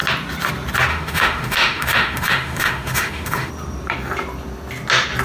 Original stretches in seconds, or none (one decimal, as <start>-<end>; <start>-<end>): 0.0-0.9; 3.5-5.2